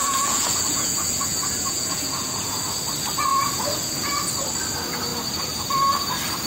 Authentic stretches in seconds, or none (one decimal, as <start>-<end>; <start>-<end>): 2.6-3.3; 4.1-6.5